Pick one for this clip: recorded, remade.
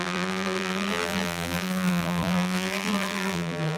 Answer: remade